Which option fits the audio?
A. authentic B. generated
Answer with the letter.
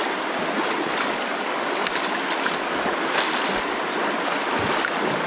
A